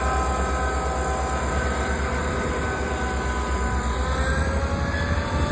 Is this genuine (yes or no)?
yes